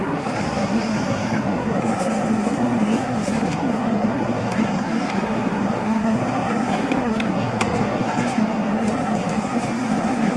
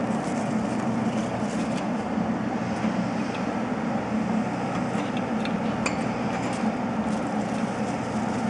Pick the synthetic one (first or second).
first